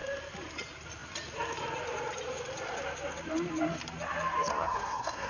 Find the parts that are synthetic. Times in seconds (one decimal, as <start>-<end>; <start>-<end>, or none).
4.5-5.3